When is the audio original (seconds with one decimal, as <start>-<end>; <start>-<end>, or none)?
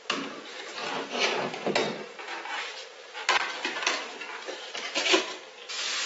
0.0-1.8; 2.6-4.3; 5.2-6.1